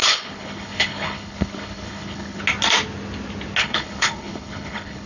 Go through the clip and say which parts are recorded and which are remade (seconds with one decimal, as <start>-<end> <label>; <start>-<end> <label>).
0.0-2.4 remade; 2.4-3.6 recorded; 3.6-5.1 remade